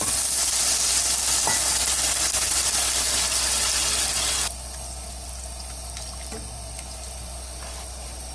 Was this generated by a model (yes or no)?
no